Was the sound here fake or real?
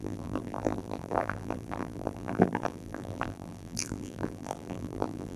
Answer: fake